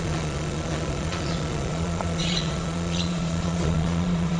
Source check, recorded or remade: remade